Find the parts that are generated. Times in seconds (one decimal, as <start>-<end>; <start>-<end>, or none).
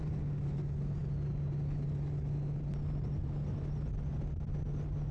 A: none